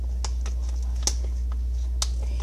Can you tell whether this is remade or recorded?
recorded